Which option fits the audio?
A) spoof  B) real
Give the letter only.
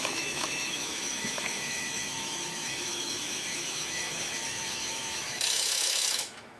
A